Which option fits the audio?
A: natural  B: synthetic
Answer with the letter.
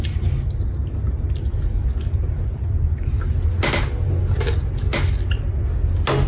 A